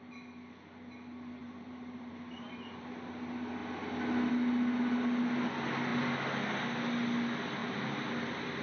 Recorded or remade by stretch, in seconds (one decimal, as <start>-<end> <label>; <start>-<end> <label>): 0.0-1.4 recorded; 1.4-2.8 remade; 2.8-7.6 recorded; 7.6-8.1 remade; 8.1-8.6 recorded